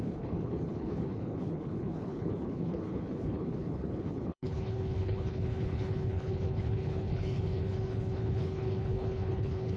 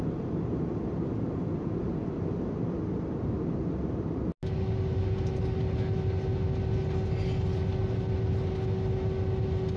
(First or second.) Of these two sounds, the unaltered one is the second